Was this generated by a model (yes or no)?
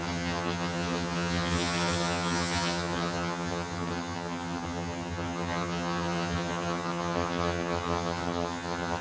yes